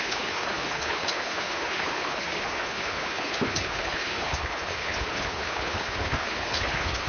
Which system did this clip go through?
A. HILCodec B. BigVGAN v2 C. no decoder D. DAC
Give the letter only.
A